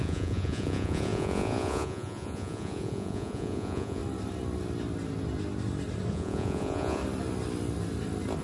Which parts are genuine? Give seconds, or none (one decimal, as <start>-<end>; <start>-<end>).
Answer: 4.0-6.1; 7.0-8.4